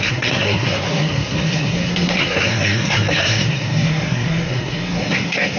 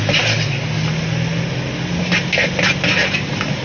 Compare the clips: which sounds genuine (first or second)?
second